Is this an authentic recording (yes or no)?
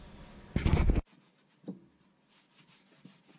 yes